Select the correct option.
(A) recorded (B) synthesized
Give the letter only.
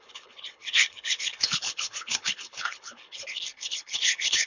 B